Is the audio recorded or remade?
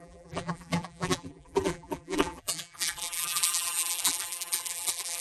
remade